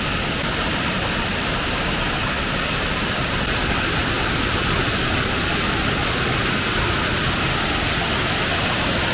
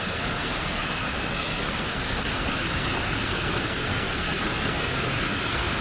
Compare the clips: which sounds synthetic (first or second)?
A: second